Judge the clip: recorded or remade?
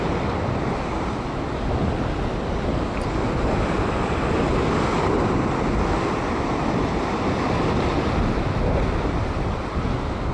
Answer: recorded